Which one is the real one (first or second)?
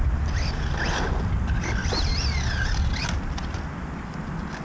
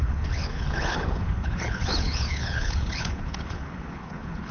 first